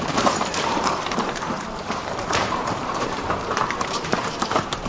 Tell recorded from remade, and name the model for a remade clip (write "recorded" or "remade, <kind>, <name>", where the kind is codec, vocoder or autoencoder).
remade, vocoder, BigVGAN v2